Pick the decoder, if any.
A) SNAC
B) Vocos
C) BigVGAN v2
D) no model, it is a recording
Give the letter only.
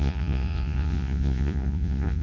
B